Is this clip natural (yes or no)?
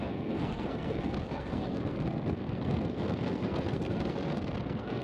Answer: no